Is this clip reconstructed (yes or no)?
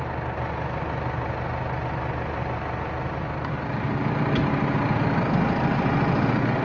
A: no